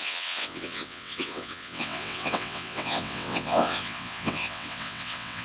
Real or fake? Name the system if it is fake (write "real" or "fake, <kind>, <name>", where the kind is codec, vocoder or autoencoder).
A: fake, vocoder, WaveNeXt